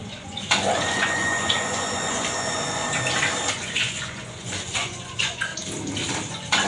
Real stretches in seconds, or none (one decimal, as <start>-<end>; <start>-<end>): 2.8-3.5; 5.5-6.3